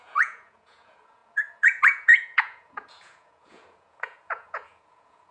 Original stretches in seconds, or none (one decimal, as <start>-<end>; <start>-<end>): none